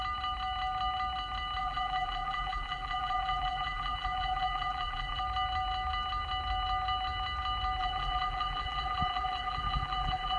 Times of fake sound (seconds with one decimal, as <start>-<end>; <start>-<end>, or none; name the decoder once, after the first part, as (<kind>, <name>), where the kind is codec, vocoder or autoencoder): 1.6-5.2 (vocoder, BigVGAN v2); 7.8-10.4